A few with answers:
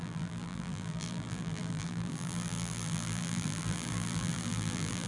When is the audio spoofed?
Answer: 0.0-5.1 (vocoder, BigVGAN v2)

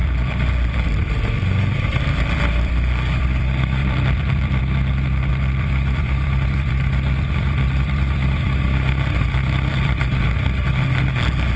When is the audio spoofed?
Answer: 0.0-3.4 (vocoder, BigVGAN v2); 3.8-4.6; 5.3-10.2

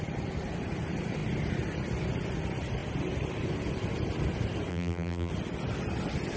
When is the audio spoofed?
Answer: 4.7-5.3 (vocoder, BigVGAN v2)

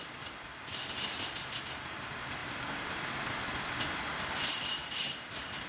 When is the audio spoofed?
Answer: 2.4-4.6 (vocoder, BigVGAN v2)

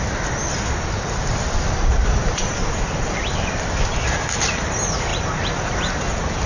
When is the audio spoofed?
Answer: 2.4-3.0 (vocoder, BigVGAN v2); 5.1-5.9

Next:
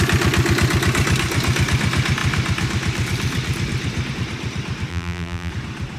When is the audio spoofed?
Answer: 4.9-5.5 (vocoder, BigVGAN v2)

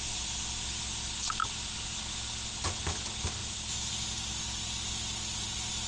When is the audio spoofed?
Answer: 3.4-3.9 (vocoder, BigVGAN v2)

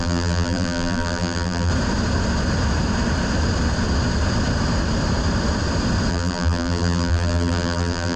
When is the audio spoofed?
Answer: 0.0-1.7 (vocoder, BigVGAN v2); 6.1-8.2